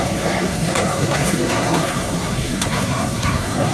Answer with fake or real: fake